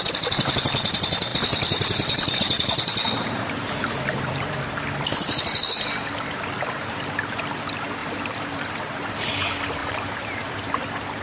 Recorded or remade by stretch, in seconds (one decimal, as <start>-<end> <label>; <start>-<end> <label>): 0.0-1.3 recorded; 1.3-4.7 remade; 4.7-8.0 recorded; 8.0-8.7 remade; 8.7-9.8 recorded; 9.8-10.7 remade; 10.7-11.2 recorded